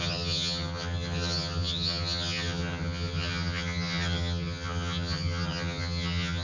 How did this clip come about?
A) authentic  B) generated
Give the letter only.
B